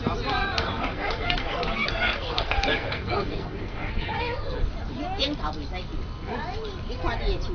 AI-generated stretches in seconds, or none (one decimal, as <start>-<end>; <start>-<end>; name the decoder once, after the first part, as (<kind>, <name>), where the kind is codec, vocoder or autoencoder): 0.4-4.6 (codec, SNAC)